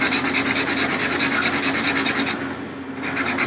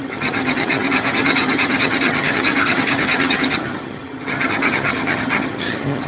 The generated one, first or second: second